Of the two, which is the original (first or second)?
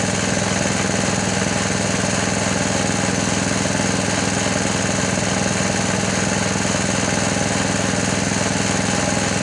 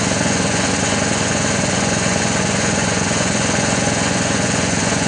first